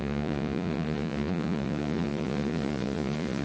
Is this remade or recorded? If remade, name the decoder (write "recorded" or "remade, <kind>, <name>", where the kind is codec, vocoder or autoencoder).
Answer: remade, vocoder, Vocos